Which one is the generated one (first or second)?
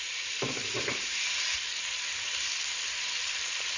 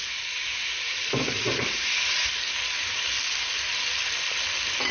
first